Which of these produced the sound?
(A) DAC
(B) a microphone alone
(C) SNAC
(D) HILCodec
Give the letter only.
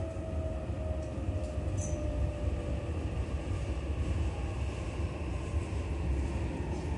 B